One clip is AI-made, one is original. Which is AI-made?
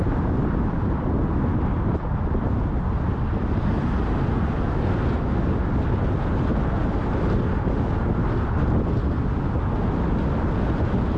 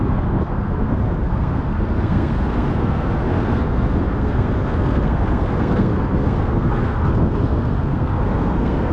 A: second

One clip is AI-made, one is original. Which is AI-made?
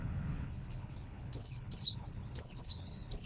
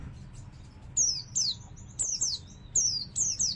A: first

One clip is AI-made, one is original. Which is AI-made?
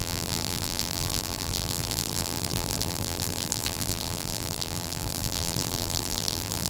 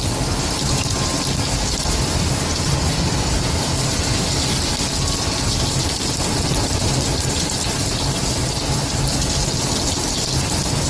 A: first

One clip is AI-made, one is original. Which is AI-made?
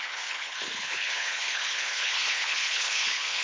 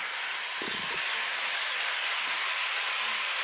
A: first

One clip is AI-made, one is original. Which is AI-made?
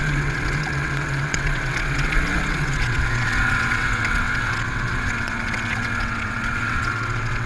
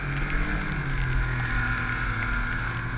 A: first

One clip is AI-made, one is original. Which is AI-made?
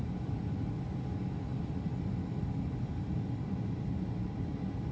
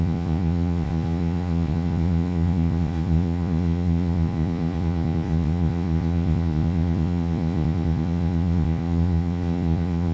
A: second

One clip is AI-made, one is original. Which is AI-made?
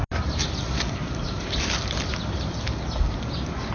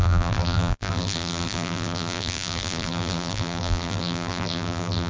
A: second